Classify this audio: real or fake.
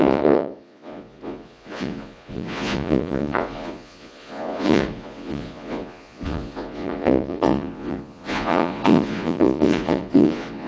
fake